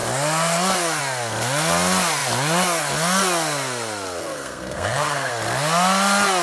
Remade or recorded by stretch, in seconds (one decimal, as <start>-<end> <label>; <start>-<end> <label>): 0.0-4.2 recorded; 4.2-5.3 remade; 5.3-6.4 recorded